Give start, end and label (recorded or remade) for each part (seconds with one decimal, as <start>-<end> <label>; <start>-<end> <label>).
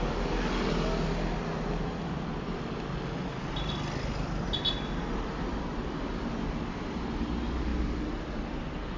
0.0-9.0 recorded